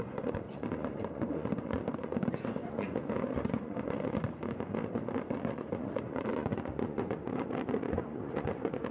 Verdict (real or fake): fake